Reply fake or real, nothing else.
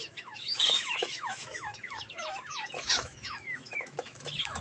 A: fake